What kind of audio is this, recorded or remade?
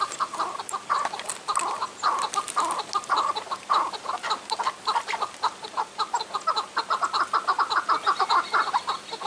recorded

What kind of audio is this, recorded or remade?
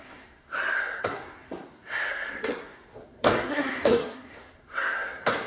remade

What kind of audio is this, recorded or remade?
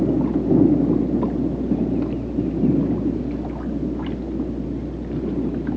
recorded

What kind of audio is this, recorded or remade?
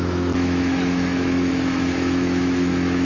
remade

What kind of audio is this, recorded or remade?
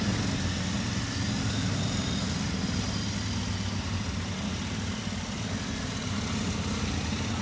recorded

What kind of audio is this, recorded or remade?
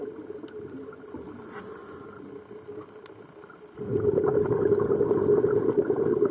recorded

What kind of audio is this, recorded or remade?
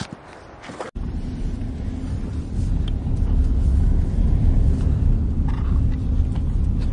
recorded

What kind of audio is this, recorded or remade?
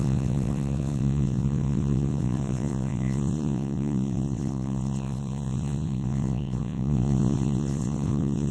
remade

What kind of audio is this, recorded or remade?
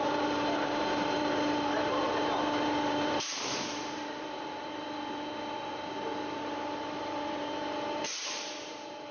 remade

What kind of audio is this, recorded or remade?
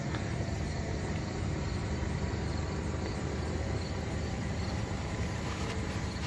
remade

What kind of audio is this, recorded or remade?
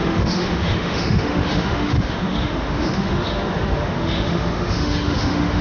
remade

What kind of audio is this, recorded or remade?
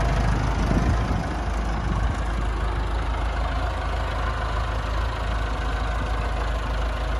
recorded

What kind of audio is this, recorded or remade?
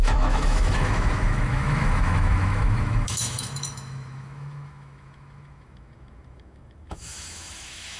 remade